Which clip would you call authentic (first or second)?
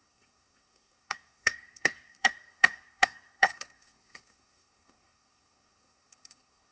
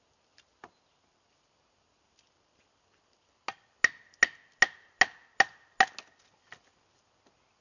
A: second